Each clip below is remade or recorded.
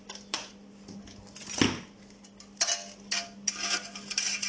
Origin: recorded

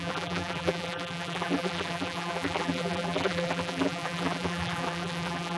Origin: remade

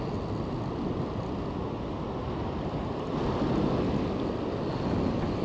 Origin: recorded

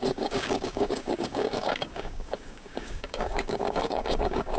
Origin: remade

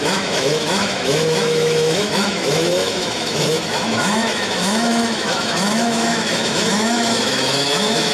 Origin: remade